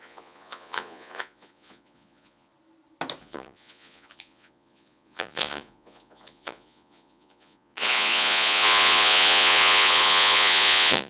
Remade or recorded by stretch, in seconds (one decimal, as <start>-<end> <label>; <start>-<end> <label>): 0.0-2.5 remade; 2.5-3.2 recorded; 3.2-11.1 remade